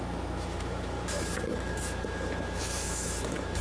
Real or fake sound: fake